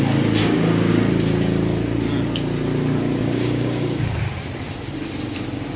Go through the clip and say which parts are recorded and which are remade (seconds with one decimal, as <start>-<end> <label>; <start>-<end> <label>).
0.0-0.4 recorded; 0.4-0.9 remade; 0.9-3.2 recorded; 3.2-4.0 remade; 4.0-5.8 recorded